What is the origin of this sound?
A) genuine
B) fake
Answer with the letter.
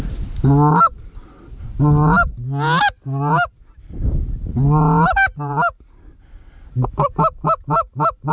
A